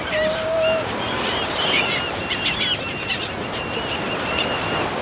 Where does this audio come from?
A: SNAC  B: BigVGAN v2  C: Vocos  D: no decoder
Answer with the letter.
B